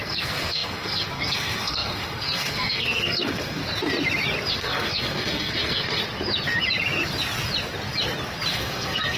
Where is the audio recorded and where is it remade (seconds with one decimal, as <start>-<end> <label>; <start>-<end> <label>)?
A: 0.0-3.6 remade; 3.6-4.5 recorded; 4.5-6.0 remade; 6.0-8.5 recorded; 8.5-9.2 remade